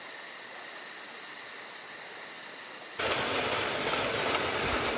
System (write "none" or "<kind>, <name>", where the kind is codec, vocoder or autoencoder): none